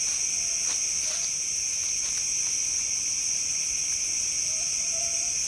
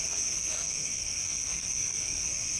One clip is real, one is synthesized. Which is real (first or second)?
first